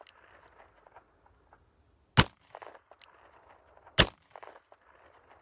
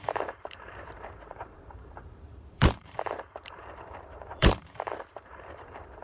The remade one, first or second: second